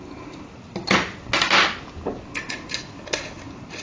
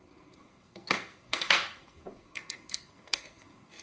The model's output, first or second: second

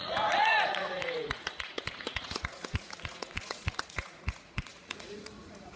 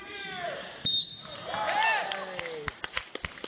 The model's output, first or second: first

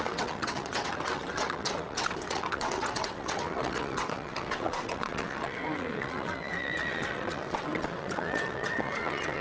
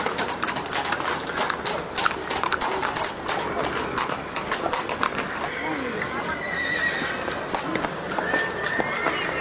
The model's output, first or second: first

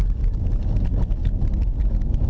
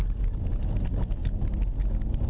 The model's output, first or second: first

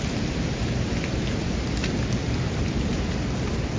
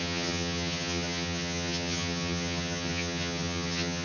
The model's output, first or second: second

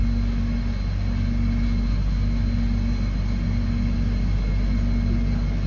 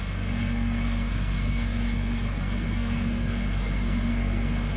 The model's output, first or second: second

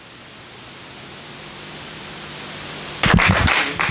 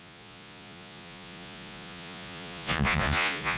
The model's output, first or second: second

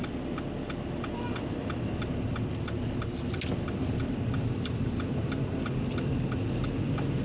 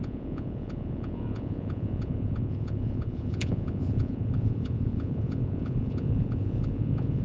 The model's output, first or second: second